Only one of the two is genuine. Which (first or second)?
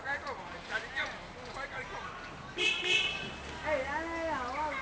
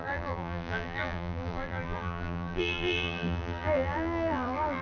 first